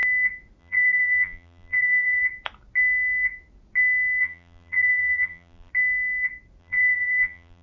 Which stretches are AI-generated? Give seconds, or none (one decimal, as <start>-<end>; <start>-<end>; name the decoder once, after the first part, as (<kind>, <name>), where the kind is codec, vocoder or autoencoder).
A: 0.6-2.2 (vocoder, BigVGAN v2); 4.2-5.7; 6.6-7.6